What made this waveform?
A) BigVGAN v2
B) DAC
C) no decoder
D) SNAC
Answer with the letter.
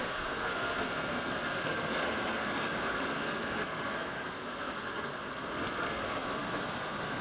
D